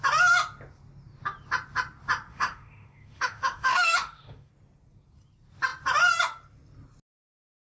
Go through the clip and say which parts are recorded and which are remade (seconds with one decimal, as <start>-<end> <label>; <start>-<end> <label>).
0.0-2.3 recorded; 2.3-4.5 remade; 4.5-7.7 recorded

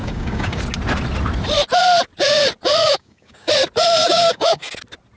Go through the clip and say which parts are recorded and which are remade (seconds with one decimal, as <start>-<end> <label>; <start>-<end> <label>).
0.0-0.6 remade; 0.6-2.8 recorded; 2.8-3.5 remade; 3.5-4.0 recorded; 4.0-4.7 remade; 4.7-5.2 recorded

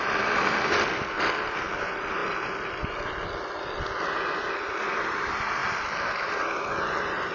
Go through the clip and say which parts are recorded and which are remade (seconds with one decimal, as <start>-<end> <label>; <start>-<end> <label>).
0.0-7.3 recorded

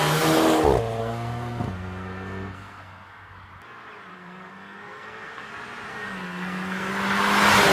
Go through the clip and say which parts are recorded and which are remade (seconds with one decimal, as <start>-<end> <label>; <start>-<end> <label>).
0.0-1.0 recorded; 1.0-3.5 remade; 3.5-4.1 recorded; 4.1-5.5 remade; 5.5-5.9 recorded; 5.9-6.9 remade; 6.9-7.7 recorded

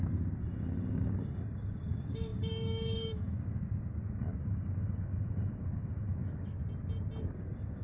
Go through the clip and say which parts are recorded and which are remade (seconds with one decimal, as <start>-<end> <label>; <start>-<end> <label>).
0.0-6.6 remade; 6.6-7.2 recorded; 7.2-7.8 remade